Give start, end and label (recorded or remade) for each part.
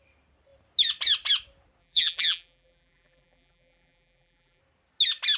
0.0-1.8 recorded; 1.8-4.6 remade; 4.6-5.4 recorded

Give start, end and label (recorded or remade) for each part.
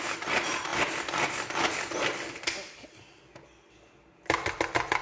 0.0-5.0 recorded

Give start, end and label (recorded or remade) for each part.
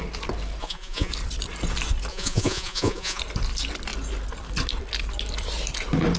0.0-0.6 recorded; 0.6-1.1 remade; 1.1-2.1 recorded; 2.1-3.2 remade; 3.2-6.2 recorded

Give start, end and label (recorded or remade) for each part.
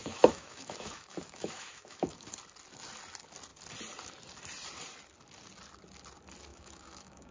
0.0-2.3 remade; 2.3-6.5 recorded; 6.5-7.3 remade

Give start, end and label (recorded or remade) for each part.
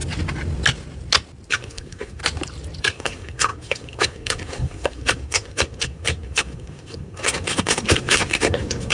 0.0-1.5 recorded; 1.5-2.2 remade; 2.2-2.8 recorded; 2.8-8.9 remade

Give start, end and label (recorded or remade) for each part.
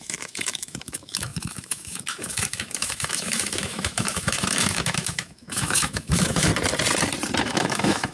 0.0-6.5 remade; 6.5-7.4 recorded; 7.4-8.1 remade